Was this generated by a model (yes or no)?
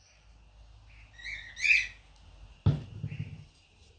no